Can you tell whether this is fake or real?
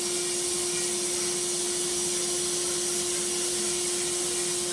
real